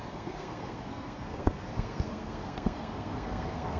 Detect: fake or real fake